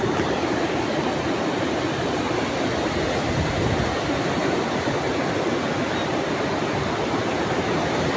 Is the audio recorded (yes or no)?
yes